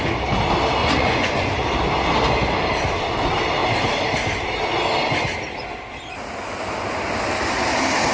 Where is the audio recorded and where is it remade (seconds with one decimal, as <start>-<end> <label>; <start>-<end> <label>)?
0.0-0.8 recorded; 0.8-1.5 remade; 1.5-8.1 recorded